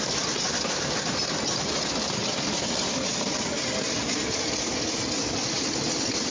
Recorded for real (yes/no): yes